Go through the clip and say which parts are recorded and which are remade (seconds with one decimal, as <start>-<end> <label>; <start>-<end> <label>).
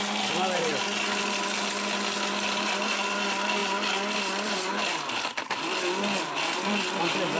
0.0-0.7 remade; 0.7-2.8 recorded; 2.8-7.4 remade